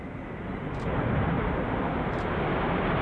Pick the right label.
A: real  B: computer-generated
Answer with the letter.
A